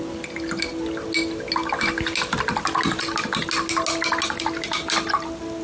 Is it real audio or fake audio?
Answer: real